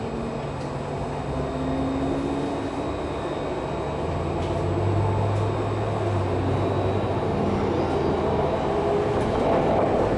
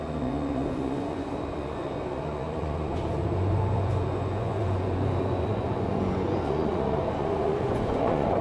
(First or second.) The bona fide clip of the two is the first